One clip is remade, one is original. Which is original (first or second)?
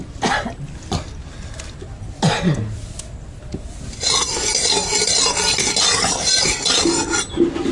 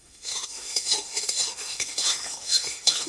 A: first